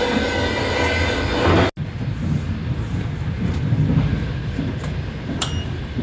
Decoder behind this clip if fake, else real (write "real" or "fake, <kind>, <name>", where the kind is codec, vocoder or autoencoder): real